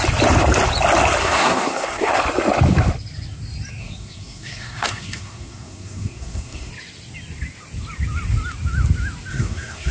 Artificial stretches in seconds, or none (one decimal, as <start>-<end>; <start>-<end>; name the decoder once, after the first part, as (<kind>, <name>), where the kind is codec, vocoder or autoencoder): 1.2-2.1 (codec, SNAC); 3.8-6.7; 9.3-9.9